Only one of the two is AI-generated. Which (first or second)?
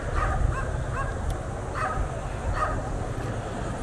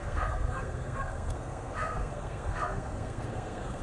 second